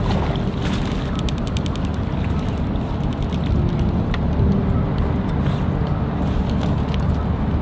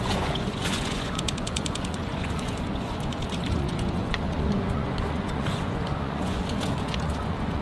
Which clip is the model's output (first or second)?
second